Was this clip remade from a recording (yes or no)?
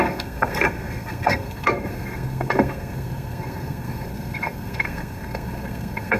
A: yes